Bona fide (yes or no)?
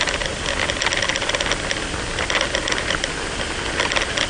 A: yes